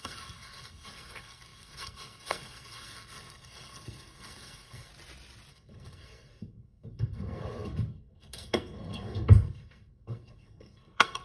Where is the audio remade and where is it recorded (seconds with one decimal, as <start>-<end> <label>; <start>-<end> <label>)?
0.0-4.9 remade; 4.9-5.5 recorded; 5.5-11.2 remade